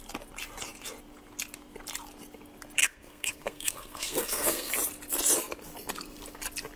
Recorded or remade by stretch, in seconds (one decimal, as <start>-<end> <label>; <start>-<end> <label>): 0.0-2.8 recorded; 2.8-4.7 remade; 4.7-6.8 recorded